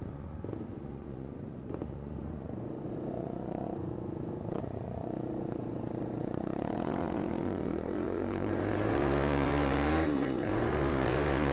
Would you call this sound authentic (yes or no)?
no